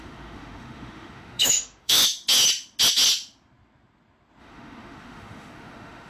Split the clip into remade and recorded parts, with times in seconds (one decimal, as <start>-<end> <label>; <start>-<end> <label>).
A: 0.0-2.0 remade; 2.0-4.4 recorded; 4.4-6.1 remade